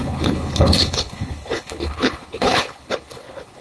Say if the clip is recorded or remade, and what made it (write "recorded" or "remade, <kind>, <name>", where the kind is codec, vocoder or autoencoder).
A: remade, codec, HILCodec